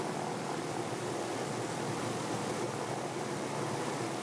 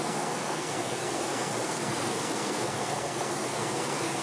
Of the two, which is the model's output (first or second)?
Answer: second